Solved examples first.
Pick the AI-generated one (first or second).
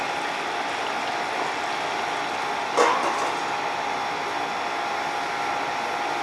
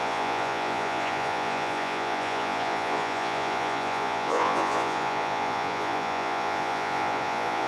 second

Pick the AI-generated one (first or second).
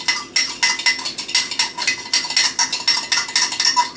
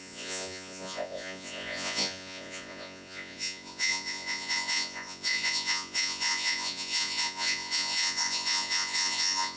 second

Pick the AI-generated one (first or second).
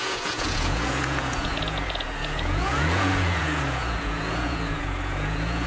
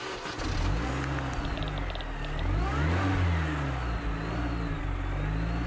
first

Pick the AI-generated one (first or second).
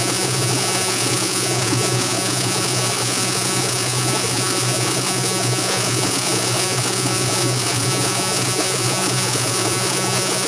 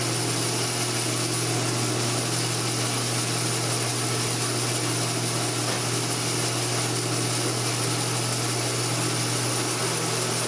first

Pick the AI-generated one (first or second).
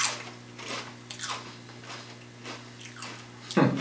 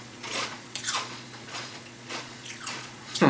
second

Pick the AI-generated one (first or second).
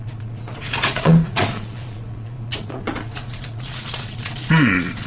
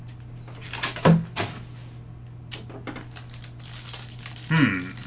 first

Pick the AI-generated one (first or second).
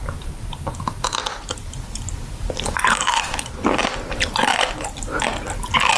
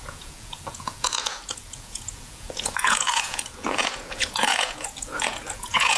second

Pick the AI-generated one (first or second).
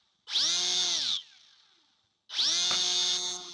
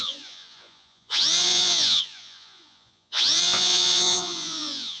second